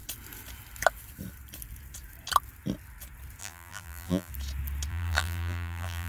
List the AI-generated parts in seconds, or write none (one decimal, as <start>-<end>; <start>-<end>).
3.4-4.3; 4.9-6.1